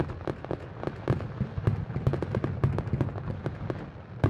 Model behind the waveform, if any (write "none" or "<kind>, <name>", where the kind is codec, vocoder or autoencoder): none